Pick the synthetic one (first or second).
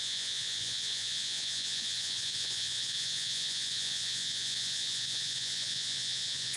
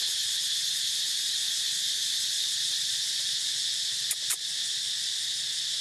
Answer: first